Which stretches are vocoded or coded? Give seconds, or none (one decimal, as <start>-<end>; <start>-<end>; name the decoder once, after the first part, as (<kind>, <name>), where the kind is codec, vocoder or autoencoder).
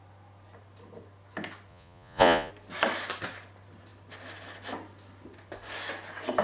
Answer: 1.7-2.5 (vocoder, Vocos)